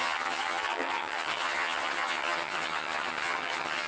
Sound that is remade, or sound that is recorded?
remade